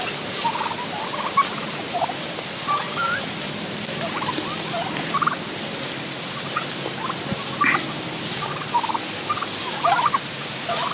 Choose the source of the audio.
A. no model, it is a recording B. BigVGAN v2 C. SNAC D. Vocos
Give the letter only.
A